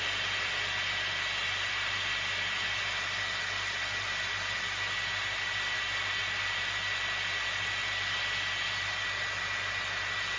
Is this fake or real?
real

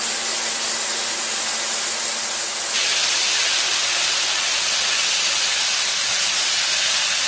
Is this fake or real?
real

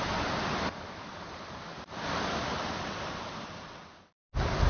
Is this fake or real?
real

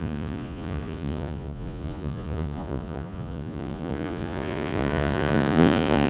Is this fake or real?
fake